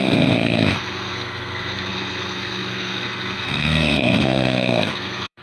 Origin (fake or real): fake